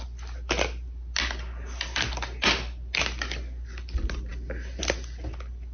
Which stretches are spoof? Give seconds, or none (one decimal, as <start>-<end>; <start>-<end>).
none